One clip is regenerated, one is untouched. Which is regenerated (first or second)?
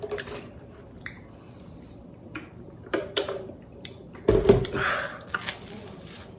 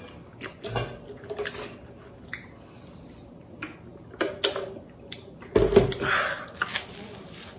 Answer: first